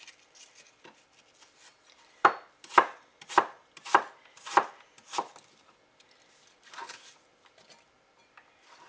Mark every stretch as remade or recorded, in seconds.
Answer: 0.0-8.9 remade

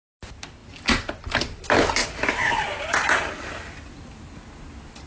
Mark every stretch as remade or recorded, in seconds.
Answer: 0.0-2.0 recorded; 2.0-3.3 remade; 3.3-5.1 recorded

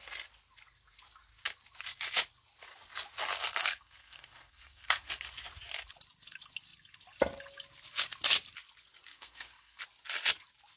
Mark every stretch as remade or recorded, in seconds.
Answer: 0.0-3.6 recorded; 3.6-5.1 remade; 5.1-9.1 recorded; 9.1-9.8 remade; 9.8-10.8 recorded